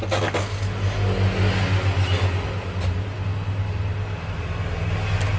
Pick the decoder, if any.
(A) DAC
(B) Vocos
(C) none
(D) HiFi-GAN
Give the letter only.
C